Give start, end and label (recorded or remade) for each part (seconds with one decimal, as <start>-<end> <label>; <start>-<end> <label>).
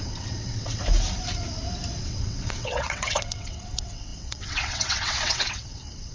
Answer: 0.0-0.8 remade; 0.8-2.0 recorded; 2.0-6.1 remade